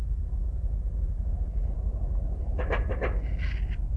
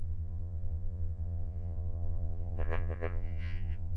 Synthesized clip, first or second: second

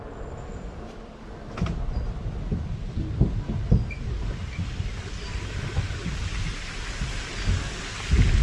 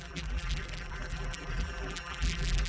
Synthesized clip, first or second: second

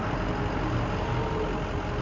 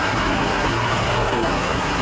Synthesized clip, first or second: second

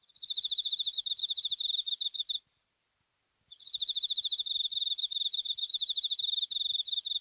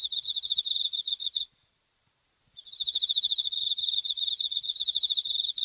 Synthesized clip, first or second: second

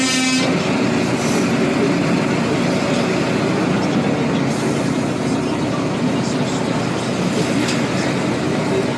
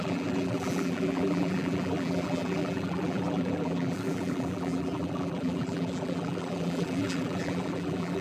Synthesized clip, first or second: second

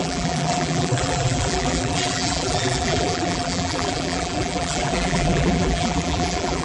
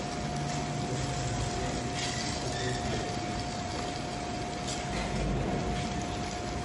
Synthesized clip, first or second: first